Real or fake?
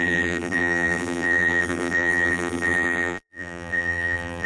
fake